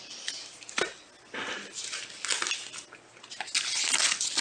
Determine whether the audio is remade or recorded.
recorded